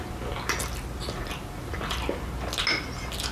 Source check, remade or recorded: recorded